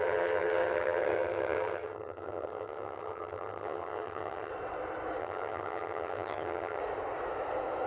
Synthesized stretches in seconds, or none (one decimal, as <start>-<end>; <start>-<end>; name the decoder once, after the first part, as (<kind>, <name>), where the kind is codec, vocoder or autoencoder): 0.0-4.5 (vocoder, HiFi-GAN); 5.2-6.8